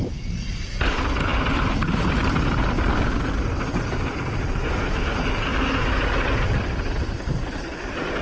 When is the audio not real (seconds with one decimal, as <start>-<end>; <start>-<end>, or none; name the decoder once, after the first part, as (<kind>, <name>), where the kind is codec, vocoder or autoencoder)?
none